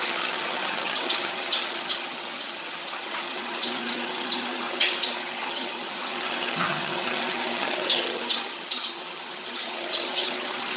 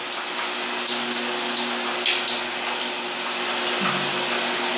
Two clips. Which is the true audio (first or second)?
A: second